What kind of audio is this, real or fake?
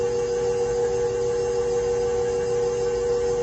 real